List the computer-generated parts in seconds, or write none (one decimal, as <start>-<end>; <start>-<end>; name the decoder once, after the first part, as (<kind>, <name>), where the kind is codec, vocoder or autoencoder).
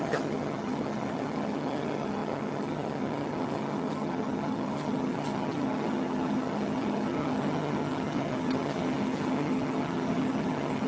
0.0-10.9 (vocoder, HiFi-GAN)